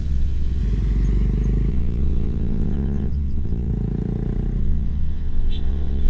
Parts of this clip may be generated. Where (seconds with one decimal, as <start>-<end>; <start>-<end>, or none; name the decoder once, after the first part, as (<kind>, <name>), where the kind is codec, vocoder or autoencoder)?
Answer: 0.0-0.6 (vocoder, WaveNeXt); 1.7-3.7; 4.6-6.1